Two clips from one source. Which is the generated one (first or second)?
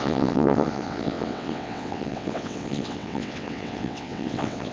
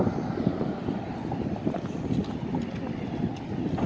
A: first